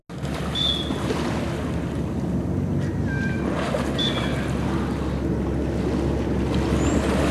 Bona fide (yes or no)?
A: yes